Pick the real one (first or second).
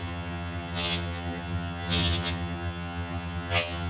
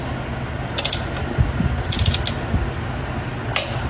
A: second